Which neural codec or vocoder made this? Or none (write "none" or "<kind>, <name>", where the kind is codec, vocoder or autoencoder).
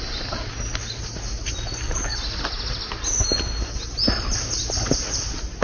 none